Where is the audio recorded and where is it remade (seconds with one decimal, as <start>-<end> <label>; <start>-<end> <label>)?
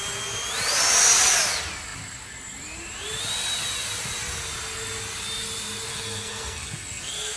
0.0-5.9 recorded; 5.9-7.4 remade